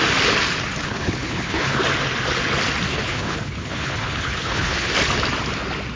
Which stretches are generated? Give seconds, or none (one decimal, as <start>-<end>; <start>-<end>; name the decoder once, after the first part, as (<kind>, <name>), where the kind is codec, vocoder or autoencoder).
0.8-1.8 (codec, HILCodec); 2.9-4.9